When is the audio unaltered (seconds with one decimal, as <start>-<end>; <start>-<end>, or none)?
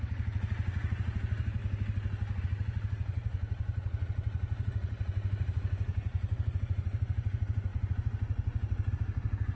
1.6-2.4